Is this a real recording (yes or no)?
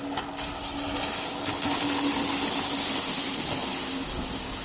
yes